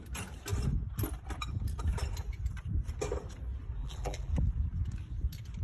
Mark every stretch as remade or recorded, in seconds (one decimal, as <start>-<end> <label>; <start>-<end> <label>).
0.0-3.8 recorded; 3.8-4.3 remade; 4.3-5.6 recorded